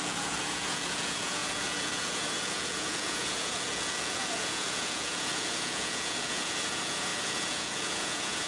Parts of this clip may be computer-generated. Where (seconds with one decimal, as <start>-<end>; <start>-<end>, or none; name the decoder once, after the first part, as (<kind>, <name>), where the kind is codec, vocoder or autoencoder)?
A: 0.0-8.5 (vocoder, Vocos)